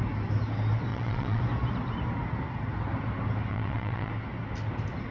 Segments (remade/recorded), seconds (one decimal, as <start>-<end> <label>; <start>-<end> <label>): 0.0-0.9 recorded; 0.9-1.4 remade; 1.4-3.5 recorded; 3.5-4.1 remade; 4.1-5.1 recorded